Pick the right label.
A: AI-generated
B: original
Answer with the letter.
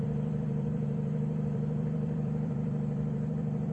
A